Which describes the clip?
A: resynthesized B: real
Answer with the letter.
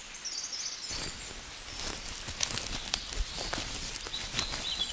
B